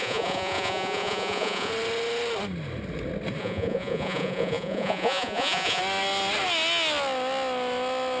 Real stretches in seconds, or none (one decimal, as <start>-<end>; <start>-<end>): 1.7-3.4; 5.8-8.2